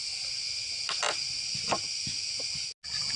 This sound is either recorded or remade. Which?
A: recorded